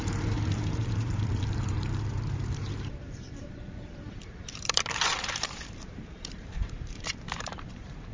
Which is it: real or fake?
fake